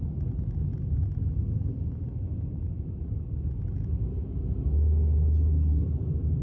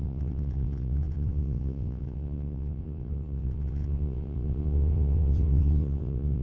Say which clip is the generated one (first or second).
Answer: second